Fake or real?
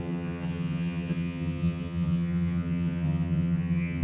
fake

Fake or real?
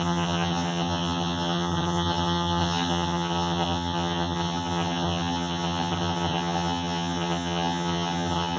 fake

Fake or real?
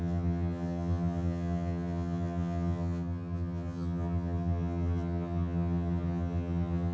fake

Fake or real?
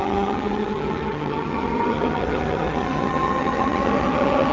fake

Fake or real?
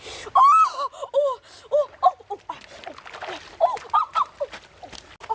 real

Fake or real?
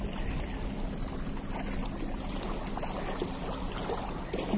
real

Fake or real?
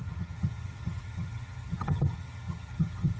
fake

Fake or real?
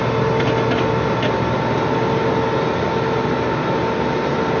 real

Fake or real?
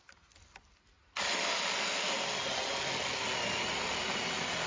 real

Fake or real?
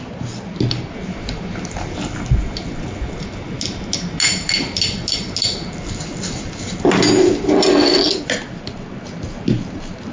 real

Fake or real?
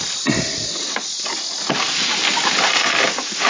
real